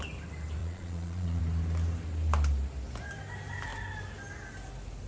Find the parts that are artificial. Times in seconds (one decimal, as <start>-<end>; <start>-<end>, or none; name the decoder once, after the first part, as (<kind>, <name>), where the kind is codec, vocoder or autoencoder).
0.6-1.4 (vocoder, Vocos)